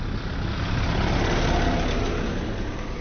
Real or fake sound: real